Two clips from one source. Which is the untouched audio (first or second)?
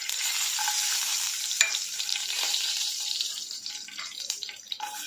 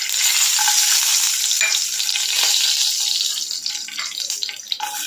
second